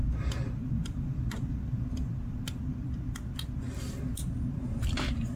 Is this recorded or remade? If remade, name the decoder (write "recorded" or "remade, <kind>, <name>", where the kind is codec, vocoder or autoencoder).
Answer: recorded